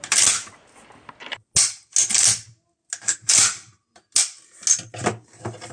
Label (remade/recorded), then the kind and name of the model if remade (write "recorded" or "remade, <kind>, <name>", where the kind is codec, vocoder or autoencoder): recorded